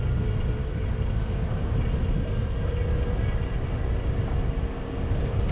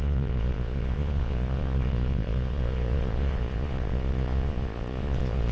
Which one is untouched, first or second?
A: first